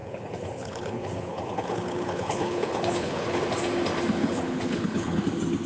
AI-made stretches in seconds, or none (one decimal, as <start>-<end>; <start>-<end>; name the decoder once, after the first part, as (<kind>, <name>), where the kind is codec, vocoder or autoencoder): 0.0-3.4 (codec, HILCodec); 4.2-5.2